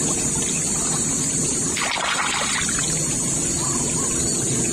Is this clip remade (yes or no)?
no